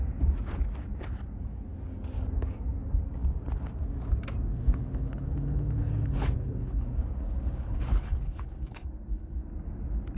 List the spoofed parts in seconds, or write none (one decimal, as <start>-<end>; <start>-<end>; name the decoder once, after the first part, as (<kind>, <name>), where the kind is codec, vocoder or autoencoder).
4.5-9.5 (codec, HILCodec)